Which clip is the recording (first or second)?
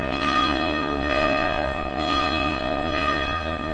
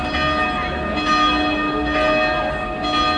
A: second